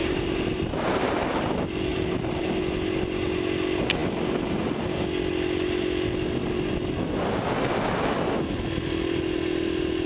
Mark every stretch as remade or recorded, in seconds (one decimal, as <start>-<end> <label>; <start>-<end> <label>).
0.0-1.5 remade; 1.5-1.9 recorded; 1.9-2.6 remade; 2.6-10.1 recorded